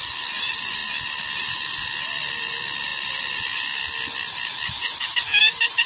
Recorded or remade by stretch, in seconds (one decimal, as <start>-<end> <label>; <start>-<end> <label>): 0.0-5.9 remade